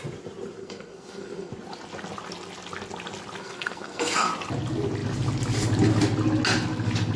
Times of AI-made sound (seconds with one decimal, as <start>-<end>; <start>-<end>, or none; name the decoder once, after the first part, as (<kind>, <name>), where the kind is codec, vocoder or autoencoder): 0.6-1.5 (codec, SNAC); 3.4-4.3